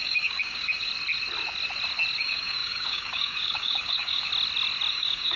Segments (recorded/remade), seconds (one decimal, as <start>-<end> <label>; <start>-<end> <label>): 0.0-0.9 remade; 0.9-2.2 recorded; 2.2-4.3 remade; 4.3-4.9 recorded; 4.9-5.4 remade